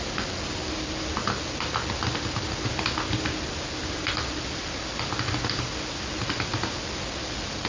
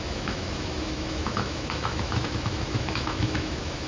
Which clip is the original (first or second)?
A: first